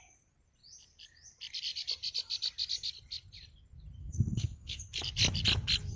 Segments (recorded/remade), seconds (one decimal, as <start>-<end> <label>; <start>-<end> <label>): 0.0-4.0 recorded; 4.0-4.8 remade; 4.8-6.0 recorded

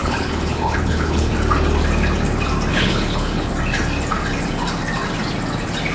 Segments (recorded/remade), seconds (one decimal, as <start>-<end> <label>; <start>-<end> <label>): 0.0-1.3 remade; 1.3-2.7 recorded; 2.7-3.5 remade; 3.5-5.9 recorded

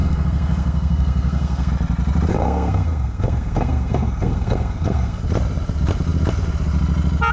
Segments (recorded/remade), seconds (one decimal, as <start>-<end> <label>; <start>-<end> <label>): 0.0-1.7 remade; 1.7-2.3 recorded; 2.3-5.2 remade; 5.2-7.3 recorded

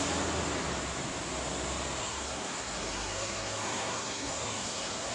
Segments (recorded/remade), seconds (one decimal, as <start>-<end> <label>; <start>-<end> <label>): 0.0-2.0 recorded; 2.0-5.1 remade

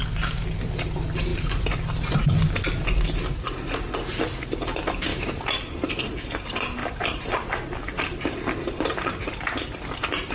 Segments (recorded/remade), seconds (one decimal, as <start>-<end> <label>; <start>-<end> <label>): 0.0-5.1 recorded; 5.1-5.9 remade; 5.9-6.8 recorded; 6.8-9.4 remade; 9.4-10.3 recorded

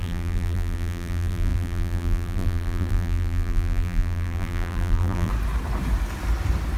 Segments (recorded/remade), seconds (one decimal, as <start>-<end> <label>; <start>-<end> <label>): 0.0-5.3 remade; 5.3-6.8 recorded